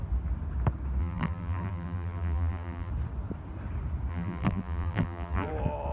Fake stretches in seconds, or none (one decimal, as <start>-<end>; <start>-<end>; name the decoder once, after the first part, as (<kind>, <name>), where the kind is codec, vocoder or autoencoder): 1.0-2.9 (vocoder, BigVGAN v2); 4.1-5.5